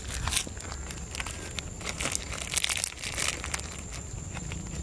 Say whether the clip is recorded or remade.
recorded